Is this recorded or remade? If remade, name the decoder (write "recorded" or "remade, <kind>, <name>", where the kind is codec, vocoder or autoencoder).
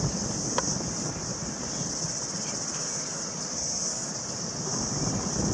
recorded